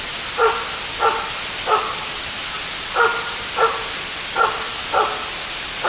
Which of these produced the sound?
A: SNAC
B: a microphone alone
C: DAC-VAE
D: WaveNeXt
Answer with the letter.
B